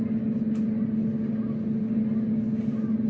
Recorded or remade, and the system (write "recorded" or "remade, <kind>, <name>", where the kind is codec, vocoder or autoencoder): recorded